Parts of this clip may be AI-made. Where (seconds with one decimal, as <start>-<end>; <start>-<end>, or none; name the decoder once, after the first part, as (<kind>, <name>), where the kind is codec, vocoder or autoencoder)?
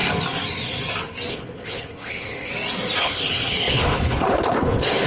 1.3-2.5 (codec, HILCodec); 3.0-5.1